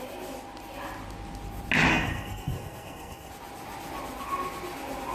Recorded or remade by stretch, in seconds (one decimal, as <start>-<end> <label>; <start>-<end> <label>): 0.0-1.9 recorded; 1.9-3.3 remade; 3.3-5.1 recorded